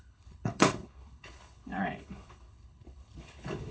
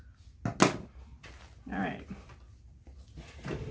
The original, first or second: second